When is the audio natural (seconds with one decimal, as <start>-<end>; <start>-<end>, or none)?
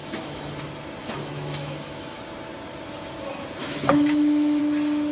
0.6-1.0; 2.2-3.6; 4.6-5.1